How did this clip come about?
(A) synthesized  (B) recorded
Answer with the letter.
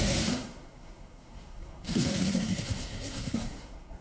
A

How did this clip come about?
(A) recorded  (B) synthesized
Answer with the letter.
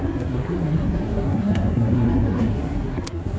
B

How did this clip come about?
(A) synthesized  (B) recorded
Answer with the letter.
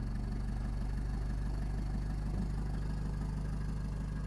B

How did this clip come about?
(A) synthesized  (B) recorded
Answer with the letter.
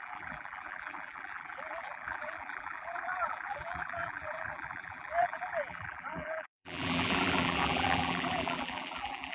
A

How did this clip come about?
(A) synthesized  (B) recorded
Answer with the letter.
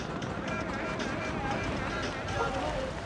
B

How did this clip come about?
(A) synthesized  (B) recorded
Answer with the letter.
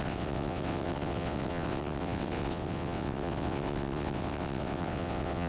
A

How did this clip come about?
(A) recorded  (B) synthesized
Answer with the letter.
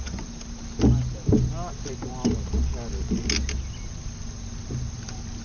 A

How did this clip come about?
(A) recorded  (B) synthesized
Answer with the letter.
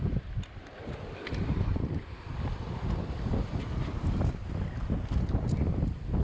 B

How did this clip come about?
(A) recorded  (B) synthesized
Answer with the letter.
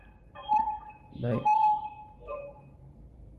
B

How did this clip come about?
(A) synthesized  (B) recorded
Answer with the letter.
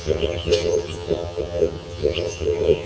A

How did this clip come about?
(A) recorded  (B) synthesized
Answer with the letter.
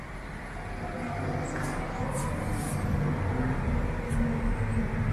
A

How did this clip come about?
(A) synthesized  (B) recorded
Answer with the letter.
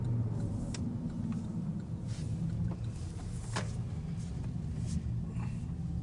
B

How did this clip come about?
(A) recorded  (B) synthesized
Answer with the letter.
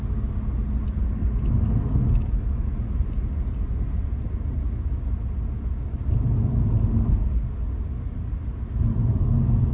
A